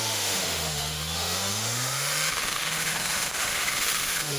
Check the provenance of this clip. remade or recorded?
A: remade